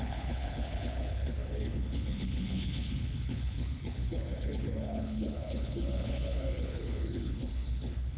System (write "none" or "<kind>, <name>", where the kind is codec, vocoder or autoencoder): codec, HILCodec